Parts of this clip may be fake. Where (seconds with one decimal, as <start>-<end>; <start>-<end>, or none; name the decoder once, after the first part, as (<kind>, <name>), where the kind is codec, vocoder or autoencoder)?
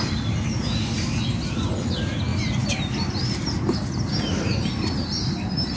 none